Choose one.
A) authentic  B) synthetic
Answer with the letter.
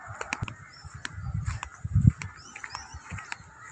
A